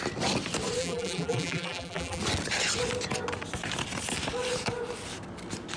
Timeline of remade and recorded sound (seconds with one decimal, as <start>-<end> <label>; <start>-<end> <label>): 0.0-0.8 recorded; 0.8-2.2 remade; 2.2-5.8 recorded